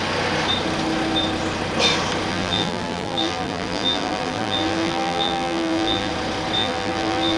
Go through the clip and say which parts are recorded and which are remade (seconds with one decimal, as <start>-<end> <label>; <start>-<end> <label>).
0.0-2.3 recorded; 2.3-6.1 remade; 6.1-6.6 recorded; 6.6-7.4 remade